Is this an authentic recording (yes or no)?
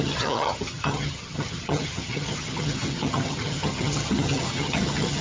no